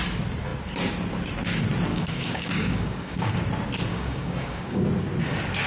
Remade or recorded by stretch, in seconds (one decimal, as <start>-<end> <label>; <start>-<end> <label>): 0.0-1.9 recorded; 1.9-3.4 remade; 3.4-3.9 recorded; 3.9-4.8 remade; 4.8-5.7 recorded